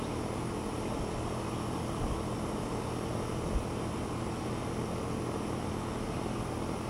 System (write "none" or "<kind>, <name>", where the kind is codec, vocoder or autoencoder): none